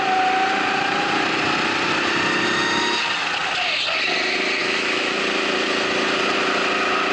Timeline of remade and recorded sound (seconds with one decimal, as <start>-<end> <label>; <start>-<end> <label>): 0.0-4.6 recorded; 4.6-5.2 remade; 5.2-7.1 recorded